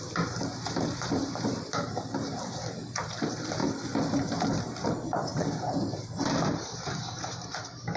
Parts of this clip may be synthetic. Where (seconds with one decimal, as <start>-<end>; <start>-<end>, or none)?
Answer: 0.0-3.6; 4.4-8.0